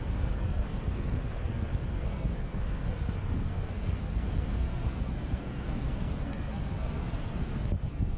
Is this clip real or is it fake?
fake